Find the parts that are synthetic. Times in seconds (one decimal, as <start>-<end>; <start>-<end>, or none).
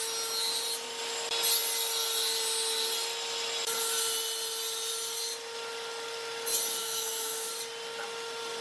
6.8-7.5